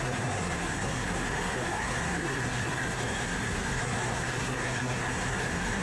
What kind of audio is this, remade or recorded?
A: remade